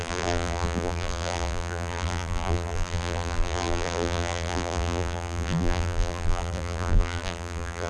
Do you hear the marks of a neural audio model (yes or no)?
yes